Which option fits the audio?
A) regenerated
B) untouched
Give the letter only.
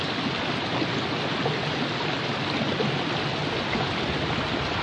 B